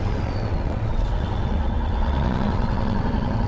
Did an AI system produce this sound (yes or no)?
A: yes